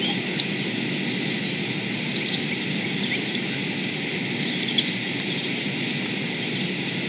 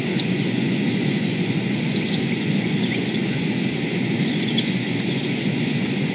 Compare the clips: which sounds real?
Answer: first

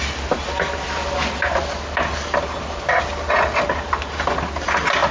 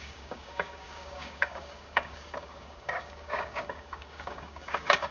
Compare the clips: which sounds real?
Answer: first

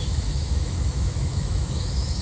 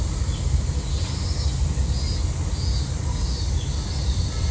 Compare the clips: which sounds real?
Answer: second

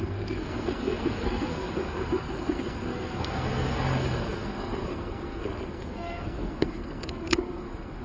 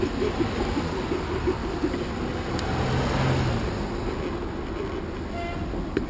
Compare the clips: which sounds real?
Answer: second